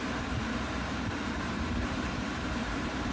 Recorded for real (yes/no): no